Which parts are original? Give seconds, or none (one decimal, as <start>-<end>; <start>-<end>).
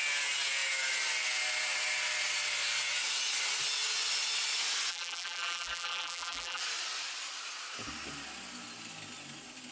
0.0-4.9; 6.6-9.7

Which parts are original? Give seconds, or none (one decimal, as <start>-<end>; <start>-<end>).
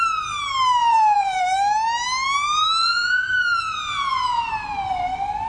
0.0-0.8; 1.4-2.8; 4.5-5.5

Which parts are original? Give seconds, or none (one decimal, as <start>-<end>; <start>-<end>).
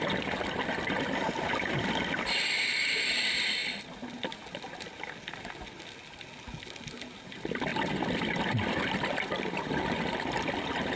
0.0-7.7; 10.4-11.0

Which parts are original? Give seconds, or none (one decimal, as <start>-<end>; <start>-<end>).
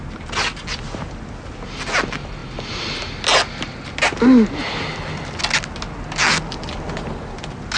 0.0-7.8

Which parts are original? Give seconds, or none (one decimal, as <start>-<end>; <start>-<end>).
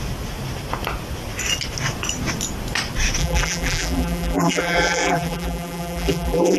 0.0-3.2